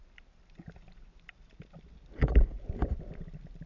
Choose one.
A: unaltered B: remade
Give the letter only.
A